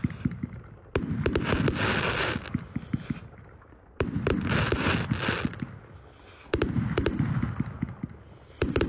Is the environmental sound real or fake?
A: real